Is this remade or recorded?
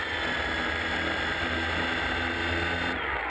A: recorded